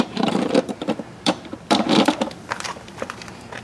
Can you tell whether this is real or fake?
fake